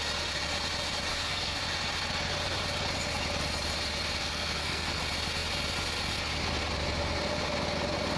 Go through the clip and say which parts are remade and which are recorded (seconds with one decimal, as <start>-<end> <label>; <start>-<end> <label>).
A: 0.0-1.1 recorded; 1.1-1.6 remade; 1.6-4.2 recorded; 4.2-5.0 remade; 5.0-8.2 recorded